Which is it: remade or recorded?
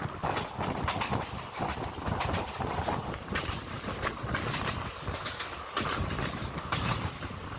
recorded